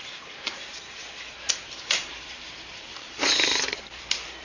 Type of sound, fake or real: fake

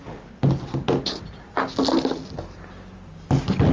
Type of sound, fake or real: real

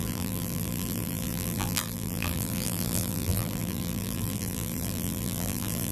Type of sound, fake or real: fake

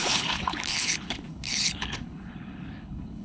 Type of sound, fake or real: fake